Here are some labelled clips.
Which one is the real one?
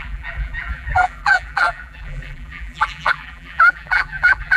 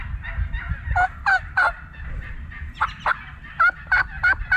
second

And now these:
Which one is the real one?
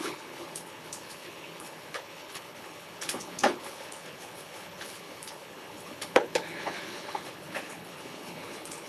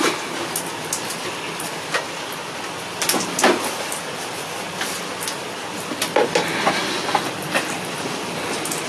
second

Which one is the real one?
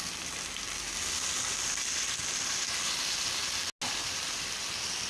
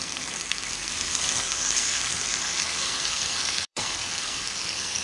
first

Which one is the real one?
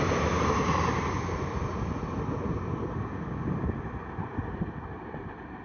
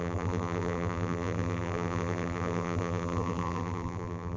first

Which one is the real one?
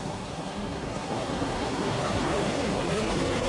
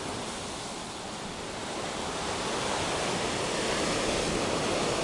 second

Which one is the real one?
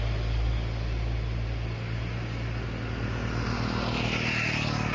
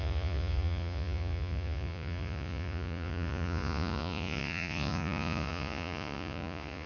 first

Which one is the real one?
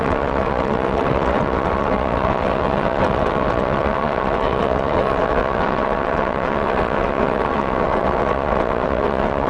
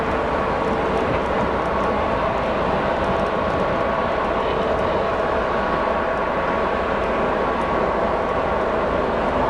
second